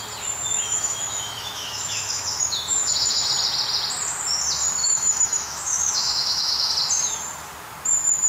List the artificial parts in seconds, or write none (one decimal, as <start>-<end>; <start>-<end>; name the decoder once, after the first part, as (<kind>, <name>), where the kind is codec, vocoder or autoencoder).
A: 0.5-3.3 (autoencoder, DAC-VAE); 4.8-6.7